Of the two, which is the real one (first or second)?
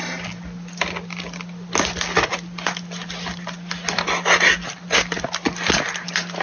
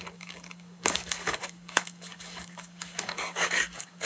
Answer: first